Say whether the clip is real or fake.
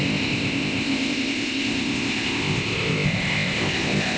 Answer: fake